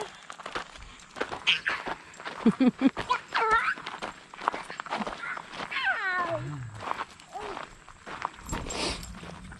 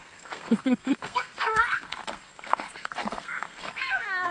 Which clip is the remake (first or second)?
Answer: second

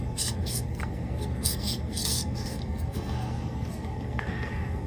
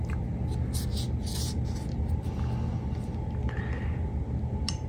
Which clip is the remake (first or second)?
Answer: first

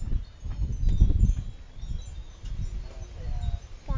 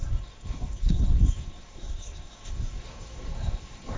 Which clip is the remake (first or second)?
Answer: second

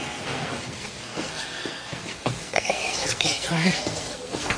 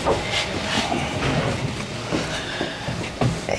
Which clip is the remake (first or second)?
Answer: first